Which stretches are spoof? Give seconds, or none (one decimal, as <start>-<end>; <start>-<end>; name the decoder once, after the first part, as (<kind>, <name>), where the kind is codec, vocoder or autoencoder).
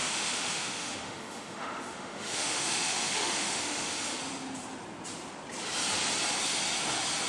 0.0-4.2 (autoencoder, DAC-VAE)